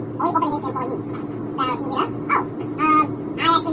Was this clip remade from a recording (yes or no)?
no